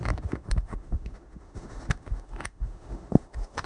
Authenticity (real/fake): fake